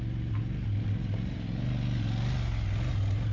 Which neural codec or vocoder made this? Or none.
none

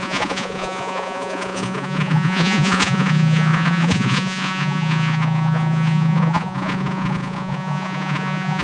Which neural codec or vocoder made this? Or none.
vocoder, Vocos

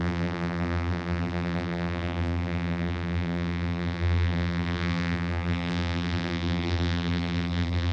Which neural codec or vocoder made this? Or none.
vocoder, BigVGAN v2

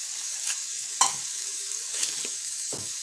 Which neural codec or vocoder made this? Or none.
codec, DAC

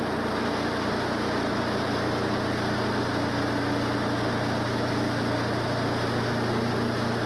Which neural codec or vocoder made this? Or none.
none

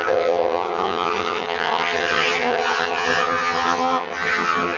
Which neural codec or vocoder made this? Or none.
vocoder, HiFi-GAN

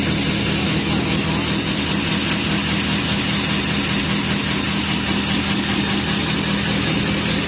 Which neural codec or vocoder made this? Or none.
none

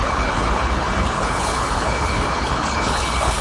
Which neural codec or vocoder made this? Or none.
codec, HILCodec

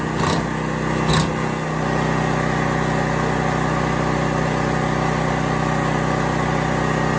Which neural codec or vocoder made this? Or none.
none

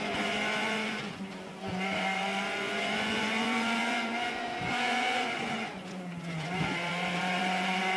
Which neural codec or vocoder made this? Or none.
vocoder, Vocos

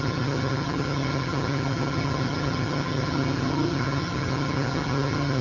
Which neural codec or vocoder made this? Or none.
vocoder, HiFi-GAN